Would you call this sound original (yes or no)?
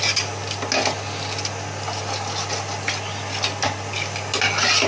yes